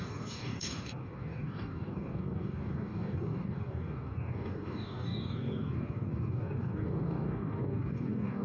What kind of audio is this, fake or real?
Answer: fake